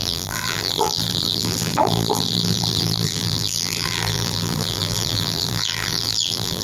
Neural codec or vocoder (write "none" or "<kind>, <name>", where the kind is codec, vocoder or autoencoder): vocoder, BigVGAN v2